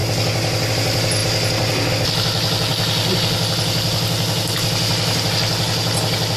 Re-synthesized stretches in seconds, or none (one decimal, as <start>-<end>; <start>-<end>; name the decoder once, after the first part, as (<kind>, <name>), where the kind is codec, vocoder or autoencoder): none